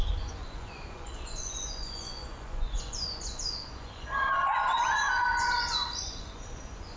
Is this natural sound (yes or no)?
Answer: no